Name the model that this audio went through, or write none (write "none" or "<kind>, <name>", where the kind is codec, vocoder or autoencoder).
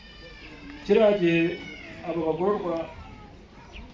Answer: none